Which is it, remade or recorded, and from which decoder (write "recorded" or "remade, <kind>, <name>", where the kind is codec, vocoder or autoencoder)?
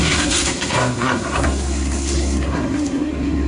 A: remade, codec, SNAC